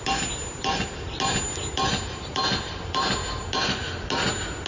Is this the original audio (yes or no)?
yes